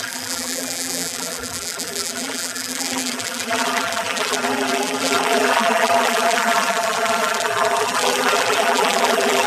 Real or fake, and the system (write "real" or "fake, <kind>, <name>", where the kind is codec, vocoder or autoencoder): fake, vocoder, BigVGAN v2